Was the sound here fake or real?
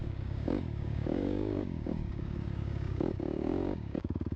fake